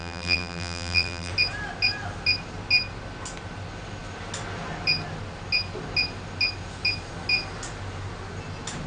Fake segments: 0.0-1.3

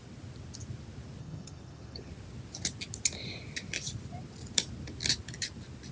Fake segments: 1.2-2.1

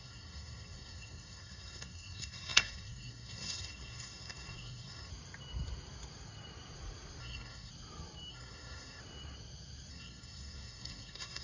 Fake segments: 0.0-5.1; 7.2-7.7; 8.3-9.0; 9.9-11.4